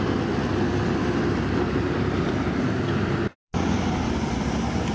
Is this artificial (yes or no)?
yes